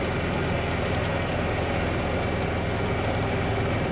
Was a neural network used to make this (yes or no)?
no